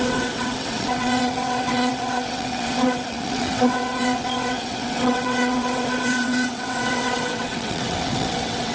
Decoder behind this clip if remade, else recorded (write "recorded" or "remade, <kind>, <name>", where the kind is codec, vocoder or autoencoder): remade, vocoder, WaveNeXt